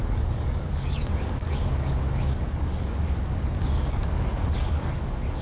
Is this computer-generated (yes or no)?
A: yes